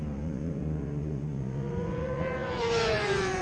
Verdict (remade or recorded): remade